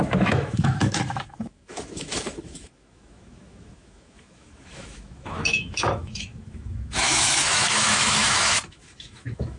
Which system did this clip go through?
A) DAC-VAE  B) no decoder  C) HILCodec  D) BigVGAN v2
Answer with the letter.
A